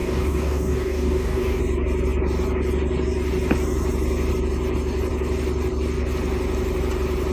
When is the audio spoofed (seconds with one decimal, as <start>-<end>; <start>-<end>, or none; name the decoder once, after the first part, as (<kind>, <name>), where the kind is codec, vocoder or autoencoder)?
0.0-1.6 (codec, DAC)